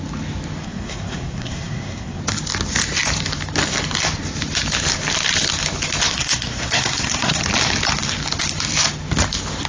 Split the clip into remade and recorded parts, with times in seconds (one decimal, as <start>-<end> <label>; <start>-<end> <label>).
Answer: 0.0-0.6 recorded; 0.6-2.2 remade; 2.2-6.1 recorded; 6.1-7.4 remade; 7.4-9.7 recorded